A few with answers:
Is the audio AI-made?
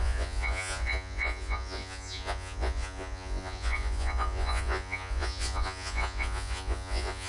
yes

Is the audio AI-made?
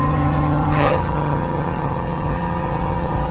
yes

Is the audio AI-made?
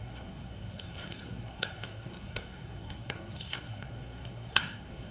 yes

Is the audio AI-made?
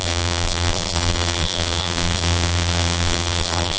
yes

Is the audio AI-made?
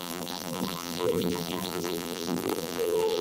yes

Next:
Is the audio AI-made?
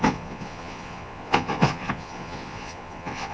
yes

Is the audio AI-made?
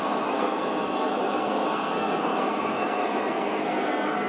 yes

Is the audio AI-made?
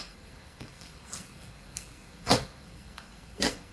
yes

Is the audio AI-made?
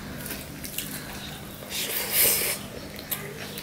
no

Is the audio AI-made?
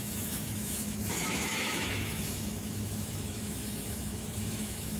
yes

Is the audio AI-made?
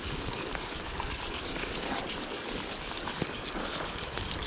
yes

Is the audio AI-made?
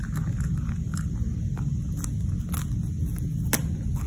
no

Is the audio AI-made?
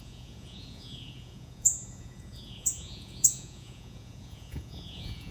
yes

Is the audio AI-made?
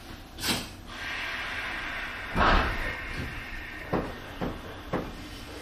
no